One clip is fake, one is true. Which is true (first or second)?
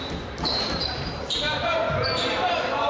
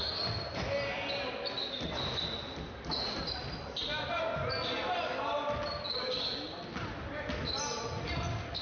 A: second